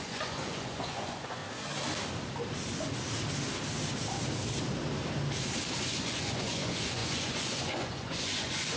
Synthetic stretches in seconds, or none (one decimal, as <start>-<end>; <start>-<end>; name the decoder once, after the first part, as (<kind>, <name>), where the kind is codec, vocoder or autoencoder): 0.0-1.4 (vocoder, Vocos); 5.8-8.8